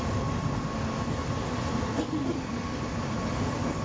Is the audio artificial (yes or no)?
no